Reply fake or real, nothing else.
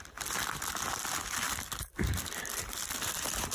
fake